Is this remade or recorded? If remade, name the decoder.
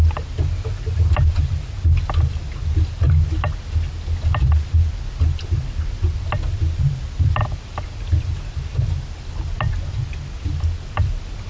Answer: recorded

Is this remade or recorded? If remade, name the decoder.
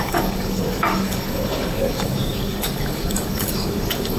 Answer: remade, codec, DAC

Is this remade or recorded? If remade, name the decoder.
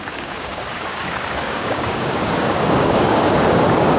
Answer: remade, codec, DAC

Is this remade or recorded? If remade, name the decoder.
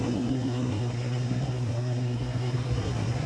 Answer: remade, codec, SNAC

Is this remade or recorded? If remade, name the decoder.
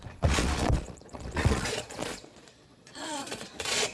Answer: remade, vocoder, Vocos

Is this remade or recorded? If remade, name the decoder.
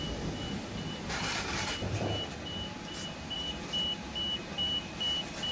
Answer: remade, vocoder, BigVGAN v2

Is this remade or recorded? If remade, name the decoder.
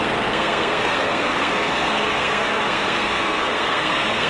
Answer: remade, codec, SNAC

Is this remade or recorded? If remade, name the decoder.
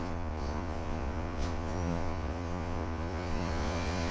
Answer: remade, vocoder, Vocos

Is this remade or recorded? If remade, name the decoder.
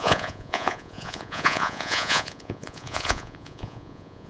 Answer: remade, vocoder, Vocos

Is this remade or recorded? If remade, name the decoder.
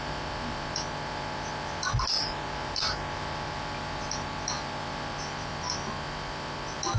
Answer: recorded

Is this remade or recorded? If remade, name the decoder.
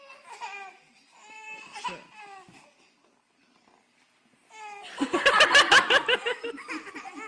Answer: recorded